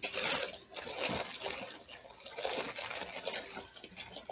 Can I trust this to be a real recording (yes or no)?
yes